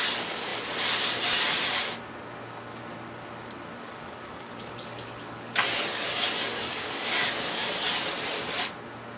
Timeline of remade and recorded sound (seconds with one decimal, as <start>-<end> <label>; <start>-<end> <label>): 0.0-3.8 recorded; 3.8-8.0 remade; 8.0-9.2 recorded